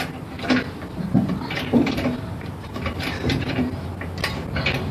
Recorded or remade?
remade